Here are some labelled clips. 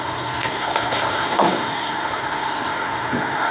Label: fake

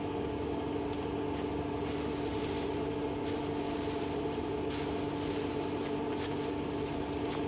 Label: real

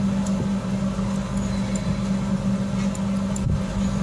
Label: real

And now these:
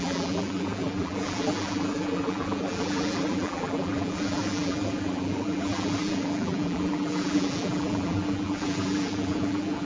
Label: fake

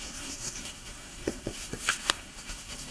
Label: fake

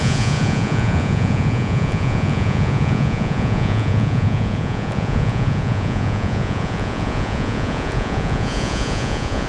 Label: fake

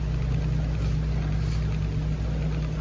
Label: real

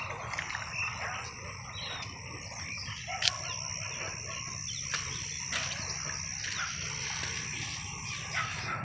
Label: real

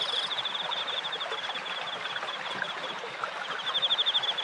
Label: real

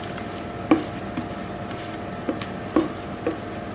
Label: real